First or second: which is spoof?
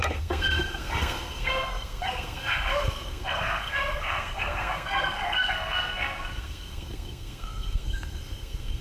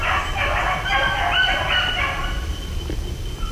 first